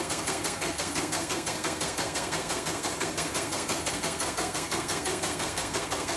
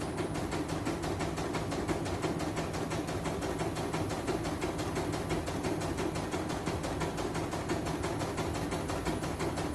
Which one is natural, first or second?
second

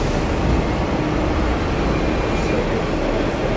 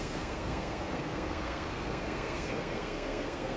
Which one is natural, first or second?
first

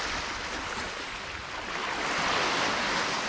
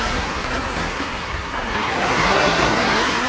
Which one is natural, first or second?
first